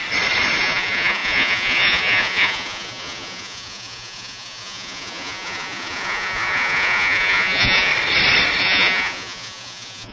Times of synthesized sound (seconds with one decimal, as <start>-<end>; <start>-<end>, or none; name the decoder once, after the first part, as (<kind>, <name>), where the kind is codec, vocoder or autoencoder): 0.6-7.9 (vocoder, Vocos); 8.6-10.1